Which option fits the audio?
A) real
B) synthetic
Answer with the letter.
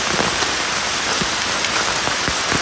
A